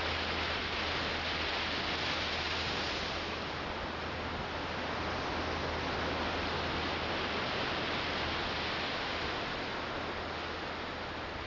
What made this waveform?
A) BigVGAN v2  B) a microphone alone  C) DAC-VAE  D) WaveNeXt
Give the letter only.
B